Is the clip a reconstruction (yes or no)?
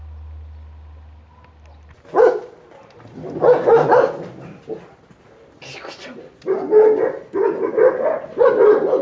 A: no